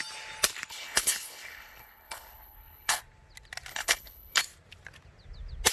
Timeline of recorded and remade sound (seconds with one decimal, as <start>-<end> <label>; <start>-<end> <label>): 0.0-0.7 recorded; 0.7-3.0 remade; 3.0-3.7 recorded; 3.7-4.4 remade; 4.4-5.7 recorded